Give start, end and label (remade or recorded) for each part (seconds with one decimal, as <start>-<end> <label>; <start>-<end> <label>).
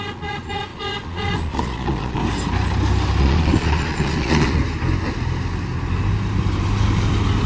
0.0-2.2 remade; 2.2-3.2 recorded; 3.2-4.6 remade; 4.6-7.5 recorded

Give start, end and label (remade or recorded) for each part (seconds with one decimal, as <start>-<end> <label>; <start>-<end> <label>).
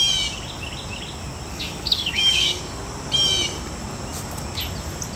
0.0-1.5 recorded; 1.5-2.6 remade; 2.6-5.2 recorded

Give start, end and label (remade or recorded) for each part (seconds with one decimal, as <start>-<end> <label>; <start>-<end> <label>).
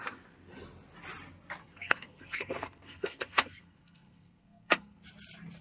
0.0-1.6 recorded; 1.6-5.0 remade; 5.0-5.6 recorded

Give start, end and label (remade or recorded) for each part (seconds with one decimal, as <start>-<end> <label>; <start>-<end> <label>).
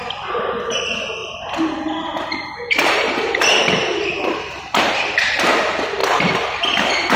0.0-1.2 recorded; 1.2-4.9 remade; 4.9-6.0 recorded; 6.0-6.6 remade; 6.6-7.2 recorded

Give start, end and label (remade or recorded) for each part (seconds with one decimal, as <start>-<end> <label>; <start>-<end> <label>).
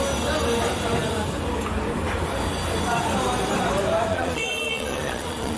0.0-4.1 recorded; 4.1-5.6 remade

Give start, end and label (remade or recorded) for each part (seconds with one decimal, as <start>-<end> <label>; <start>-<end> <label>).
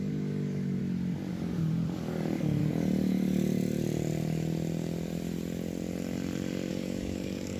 0.0-0.8 remade; 0.8-1.3 recorded; 1.3-2.6 remade; 2.6-6.7 recorded; 6.7-7.6 remade